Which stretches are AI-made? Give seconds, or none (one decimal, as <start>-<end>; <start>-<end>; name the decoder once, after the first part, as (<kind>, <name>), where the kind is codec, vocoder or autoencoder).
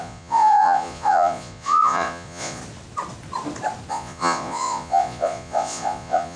0.0-2.6 (vocoder, Vocos); 3.9-6.4